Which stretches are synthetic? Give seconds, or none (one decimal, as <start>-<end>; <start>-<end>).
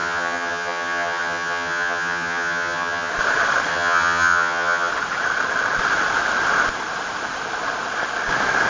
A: 0.0-3.1; 3.7-4.9